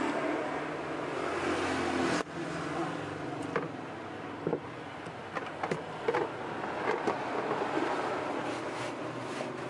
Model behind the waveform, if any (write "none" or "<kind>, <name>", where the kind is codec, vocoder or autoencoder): none